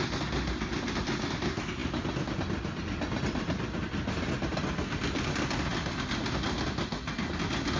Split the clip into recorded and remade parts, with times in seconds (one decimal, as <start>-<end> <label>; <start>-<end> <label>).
0.0-7.8 recorded